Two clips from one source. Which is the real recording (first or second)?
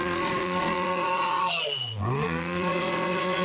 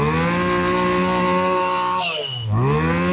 second